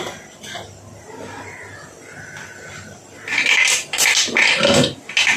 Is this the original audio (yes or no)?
yes